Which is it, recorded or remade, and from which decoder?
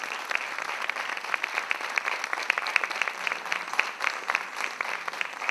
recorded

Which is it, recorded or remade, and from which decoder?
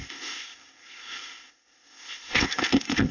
remade, codec, ZipCodec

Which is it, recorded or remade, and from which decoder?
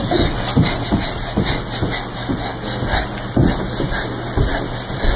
recorded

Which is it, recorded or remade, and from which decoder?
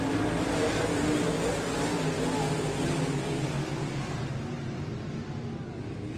recorded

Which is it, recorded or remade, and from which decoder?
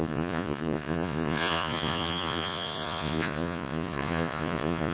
remade, vocoder, Vocos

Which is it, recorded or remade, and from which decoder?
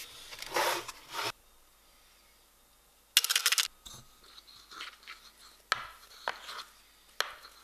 recorded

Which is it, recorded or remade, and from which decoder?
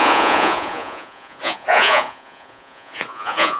remade, vocoder, Vocos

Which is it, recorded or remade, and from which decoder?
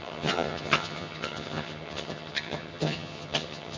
remade, vocoder, HiFi-GAN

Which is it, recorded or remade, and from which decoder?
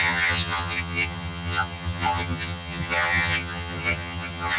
remade, vocoder, HiFi-GAN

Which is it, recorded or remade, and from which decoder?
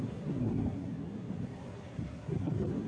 remade, codec, SNAC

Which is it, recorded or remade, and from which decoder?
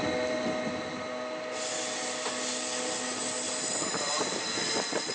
recorded